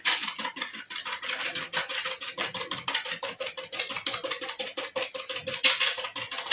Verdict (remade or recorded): recorded